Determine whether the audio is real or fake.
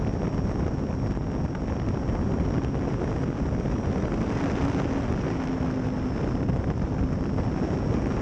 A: real